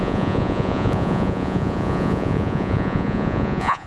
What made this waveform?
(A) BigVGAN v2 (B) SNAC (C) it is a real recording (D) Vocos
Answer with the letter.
D